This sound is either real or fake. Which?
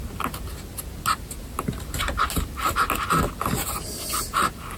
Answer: real